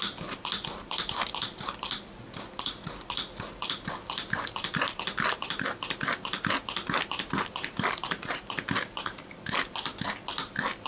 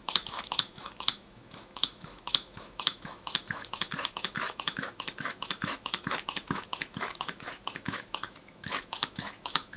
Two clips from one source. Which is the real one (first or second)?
first